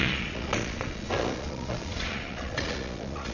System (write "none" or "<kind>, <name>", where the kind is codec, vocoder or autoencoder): vocoder, Vocos